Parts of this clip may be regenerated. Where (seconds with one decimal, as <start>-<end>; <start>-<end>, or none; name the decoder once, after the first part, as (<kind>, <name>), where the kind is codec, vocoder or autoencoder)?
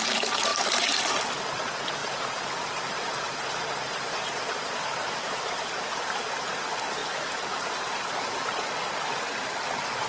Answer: 2.0-6.4 (vocoder, BigVGAN v2); 7.0-8.6